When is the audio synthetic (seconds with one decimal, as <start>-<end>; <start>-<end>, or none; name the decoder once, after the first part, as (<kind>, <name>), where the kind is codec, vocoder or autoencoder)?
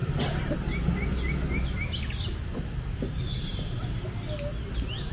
none